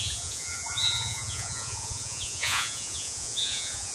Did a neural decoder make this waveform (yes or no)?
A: yes